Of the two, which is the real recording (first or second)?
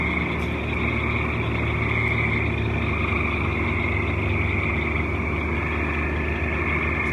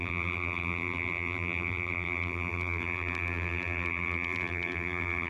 first